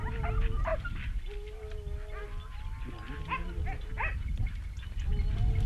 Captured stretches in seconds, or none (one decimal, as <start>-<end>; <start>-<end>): 0.0-5.7